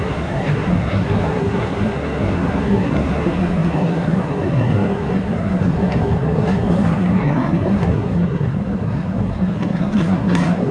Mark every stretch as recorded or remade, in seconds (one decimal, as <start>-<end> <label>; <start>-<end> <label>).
0.0-10.7 remade